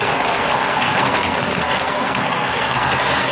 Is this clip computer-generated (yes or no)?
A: yes